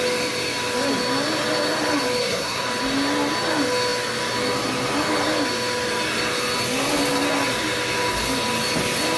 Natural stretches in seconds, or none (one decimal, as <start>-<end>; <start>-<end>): 0.0-2.2; 2.7-9.2